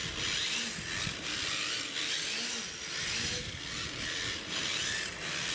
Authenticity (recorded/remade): recorded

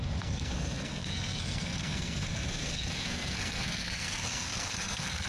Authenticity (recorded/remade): remade